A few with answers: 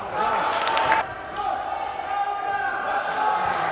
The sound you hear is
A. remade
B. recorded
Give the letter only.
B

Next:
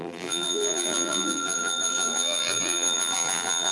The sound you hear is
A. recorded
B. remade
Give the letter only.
B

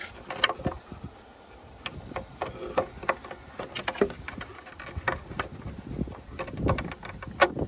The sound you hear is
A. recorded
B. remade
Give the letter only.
A